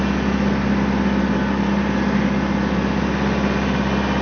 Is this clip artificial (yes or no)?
no